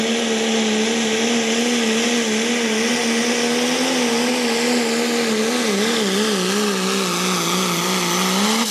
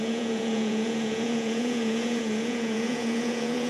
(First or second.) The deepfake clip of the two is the second